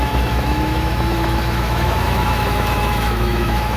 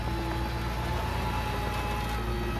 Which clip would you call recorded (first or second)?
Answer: second